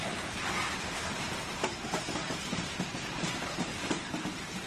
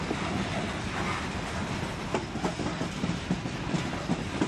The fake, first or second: first